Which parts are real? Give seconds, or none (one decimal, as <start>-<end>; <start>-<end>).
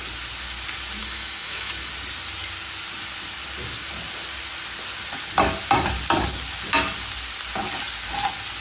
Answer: 0.0-1.0; 1.9-8.6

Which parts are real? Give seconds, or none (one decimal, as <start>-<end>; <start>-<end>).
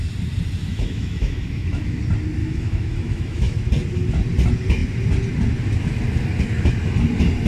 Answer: 0.0-0.6; 2.0-2.4; 3.7-7.5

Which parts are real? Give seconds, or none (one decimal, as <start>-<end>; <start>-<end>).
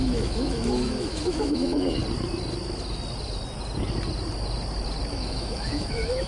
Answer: 2.0-5.1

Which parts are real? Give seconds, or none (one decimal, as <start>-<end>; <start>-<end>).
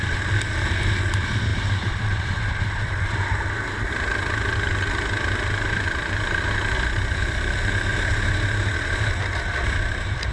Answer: 0.0-10.3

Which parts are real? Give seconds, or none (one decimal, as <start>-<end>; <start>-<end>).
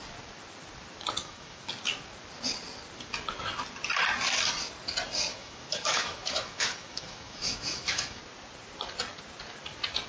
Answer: 0.0-1.2; 1.7-5.3; 8.2-10.1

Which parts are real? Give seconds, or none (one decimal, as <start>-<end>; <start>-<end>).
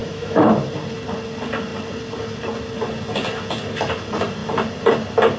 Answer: 0.5-5.4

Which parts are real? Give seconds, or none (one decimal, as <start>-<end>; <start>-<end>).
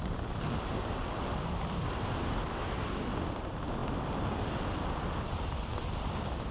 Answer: 0.0-6.5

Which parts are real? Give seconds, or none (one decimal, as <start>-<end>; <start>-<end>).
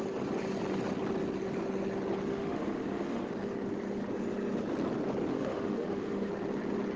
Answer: 0.0-2.3; 3.3-5.3; 6.3-7.0